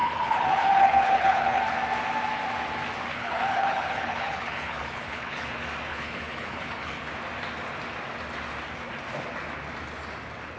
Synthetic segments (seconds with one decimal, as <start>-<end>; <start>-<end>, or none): 0.0-1.6; 3.1-5.5; 5.9-7.1